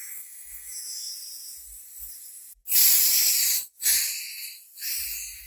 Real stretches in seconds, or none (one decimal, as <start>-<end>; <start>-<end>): 1.1-5.5